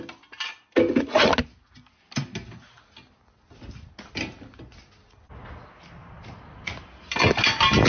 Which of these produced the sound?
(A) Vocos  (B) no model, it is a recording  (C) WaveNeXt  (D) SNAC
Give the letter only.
B